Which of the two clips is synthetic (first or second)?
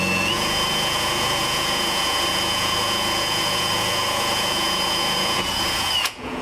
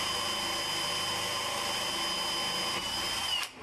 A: first